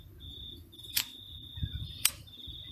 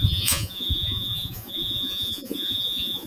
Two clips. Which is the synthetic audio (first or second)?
second